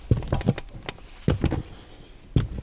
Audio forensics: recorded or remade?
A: recorded